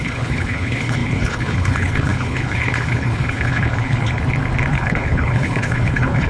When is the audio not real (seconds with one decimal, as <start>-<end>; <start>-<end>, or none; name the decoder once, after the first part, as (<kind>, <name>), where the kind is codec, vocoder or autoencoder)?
0.0-4.2 (codec, HILCodec); 4.7-6.3